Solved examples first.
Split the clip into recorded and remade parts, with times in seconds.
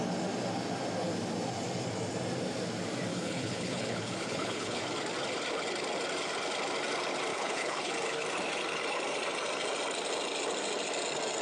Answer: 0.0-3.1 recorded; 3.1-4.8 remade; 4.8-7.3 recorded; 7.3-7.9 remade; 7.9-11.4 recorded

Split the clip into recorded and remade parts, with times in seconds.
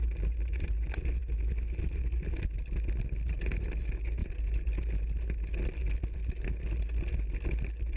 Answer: 0.0-8.0 recorded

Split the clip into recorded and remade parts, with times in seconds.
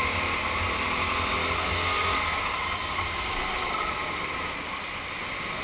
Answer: 0.0-1.4 recorded; 1.4-3.8 remade; 3.8-5.6 recorded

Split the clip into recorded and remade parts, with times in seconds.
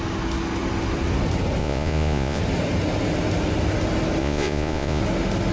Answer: 0.0-1.6 recorded; 1.6-2.4 remade; 2.4-4.2 recorded; 4.2-5.0 remade; 5.0-5.5 recorded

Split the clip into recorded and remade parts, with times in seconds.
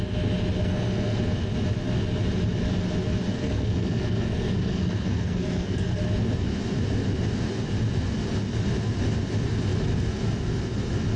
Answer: 0.0-0.6 recorded; 0.6-1.2 remade; 1.2-3.3 recorded; 3.3-6.0 remade; 6.0-11.2 recorded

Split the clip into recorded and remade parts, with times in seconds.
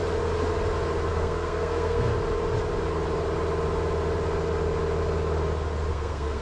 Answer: 0.0-1.1 recorded; 1.1-2.1 remade; 2.1-5.9 recorded; 5.9-6.4 remade